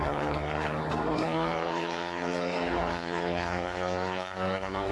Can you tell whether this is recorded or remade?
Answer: remade